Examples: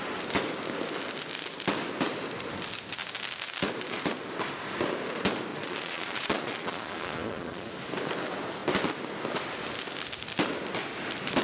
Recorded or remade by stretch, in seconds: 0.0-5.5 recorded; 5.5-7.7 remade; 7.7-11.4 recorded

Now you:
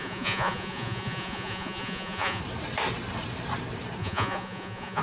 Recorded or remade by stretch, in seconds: 0.0-2.4 remade; 2.4-4.0 recorded; 4.0-5.0 remade

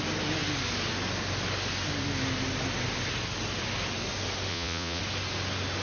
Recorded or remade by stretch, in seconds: 0.0-4.5 recorded; 4.5-5.0 remade; 5.0-5.8 recorded

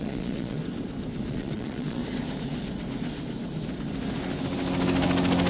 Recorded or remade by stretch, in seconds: 0.0-0.6 remade; 0.6-1.3 recorded; 1.3-2.0 remade; 2.0-5.5 recorded